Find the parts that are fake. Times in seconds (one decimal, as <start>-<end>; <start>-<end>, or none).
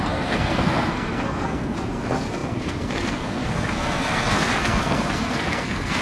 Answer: 0.0-6.0